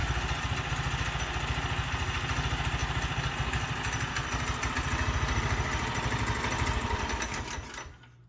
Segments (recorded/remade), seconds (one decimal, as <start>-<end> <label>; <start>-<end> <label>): 0.0-8.3 recorded